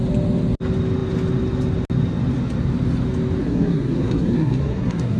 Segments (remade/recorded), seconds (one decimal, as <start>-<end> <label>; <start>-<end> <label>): 0.0-3.4 recorded; 3.4-5.2 remade